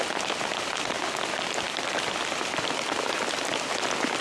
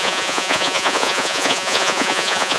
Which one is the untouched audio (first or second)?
first